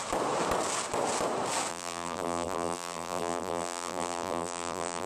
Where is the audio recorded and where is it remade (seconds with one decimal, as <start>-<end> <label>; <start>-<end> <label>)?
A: 0.0-1.7 recorded; 1.7-5.1 remade